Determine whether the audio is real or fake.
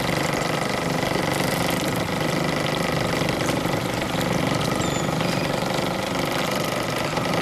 real